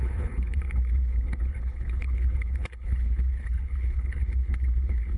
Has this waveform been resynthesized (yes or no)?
yes